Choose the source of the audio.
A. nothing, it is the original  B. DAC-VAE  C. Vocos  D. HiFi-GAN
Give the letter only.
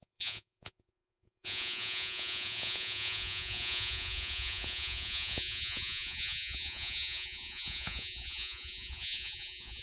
C